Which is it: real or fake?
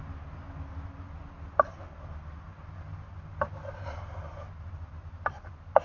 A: real